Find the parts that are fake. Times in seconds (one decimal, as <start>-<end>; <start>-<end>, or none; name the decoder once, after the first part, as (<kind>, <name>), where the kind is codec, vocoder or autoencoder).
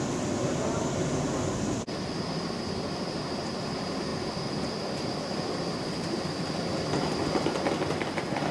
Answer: none